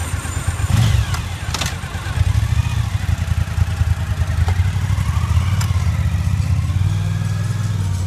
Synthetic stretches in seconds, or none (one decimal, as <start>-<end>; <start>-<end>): none